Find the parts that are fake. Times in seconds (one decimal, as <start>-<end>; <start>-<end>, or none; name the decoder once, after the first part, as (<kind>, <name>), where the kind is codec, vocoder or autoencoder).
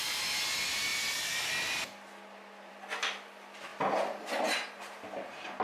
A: none